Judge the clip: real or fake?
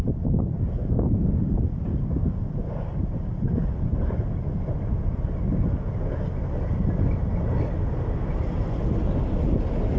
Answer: real